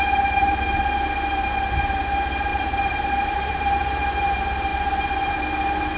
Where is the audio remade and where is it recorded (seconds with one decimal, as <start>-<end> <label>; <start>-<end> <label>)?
0.0-2.5 recorded; 2.5-4.1 remade; 4.1-6.0 recorded